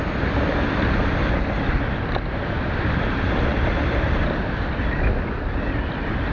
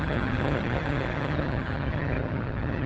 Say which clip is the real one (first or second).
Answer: first